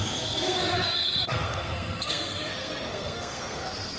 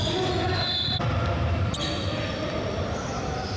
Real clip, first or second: second